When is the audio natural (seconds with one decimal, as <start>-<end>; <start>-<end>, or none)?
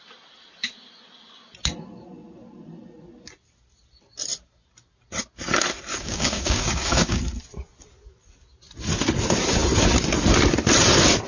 0.0-5.9; 7.2-11.3